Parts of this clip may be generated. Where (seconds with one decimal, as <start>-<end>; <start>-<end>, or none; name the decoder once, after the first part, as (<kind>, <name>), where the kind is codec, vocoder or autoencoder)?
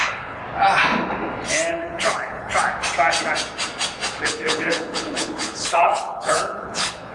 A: 0.0-0.4 (codec, HILCodec); 1.7-2.5; 4.2-7.1